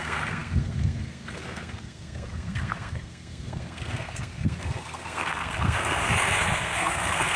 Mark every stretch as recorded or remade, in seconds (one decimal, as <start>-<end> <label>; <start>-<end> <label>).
0.0-7.4 remade